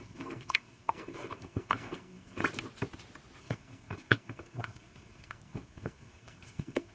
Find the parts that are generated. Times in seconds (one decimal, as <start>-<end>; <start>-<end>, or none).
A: 0.0-2.4; 3.4-6.9